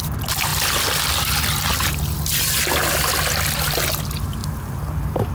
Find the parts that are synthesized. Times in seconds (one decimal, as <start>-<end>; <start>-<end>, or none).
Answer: none